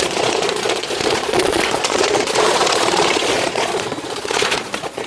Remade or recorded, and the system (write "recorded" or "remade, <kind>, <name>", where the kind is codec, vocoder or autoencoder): remade, vocoder, Vocos